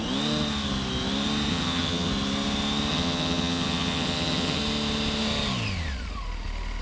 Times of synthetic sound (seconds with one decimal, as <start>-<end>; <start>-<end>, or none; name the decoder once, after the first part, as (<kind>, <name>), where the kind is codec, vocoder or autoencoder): 1.5-2.1 (vocoder, HiFi-GAN); 2.9-4.6